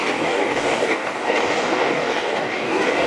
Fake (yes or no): yes